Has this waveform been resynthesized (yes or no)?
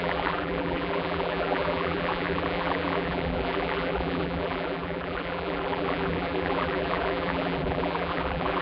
yes